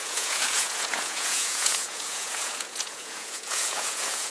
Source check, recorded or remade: remade